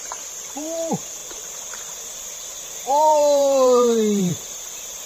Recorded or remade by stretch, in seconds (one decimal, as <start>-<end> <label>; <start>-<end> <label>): 0.0-5.1 remade